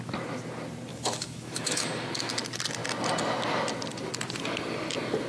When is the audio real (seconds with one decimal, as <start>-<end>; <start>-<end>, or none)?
0.0-0.9; 1.8-5.3